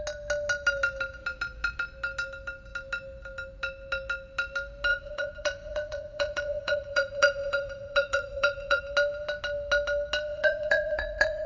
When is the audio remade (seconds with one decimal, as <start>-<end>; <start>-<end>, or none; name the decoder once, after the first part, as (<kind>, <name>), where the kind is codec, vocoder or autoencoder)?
4.9-8.8 (vocoder, Vocos); 10.3-11.5